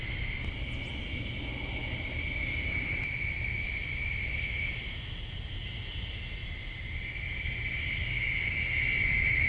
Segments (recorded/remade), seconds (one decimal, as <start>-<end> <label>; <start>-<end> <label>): 0.0-9.5 recorded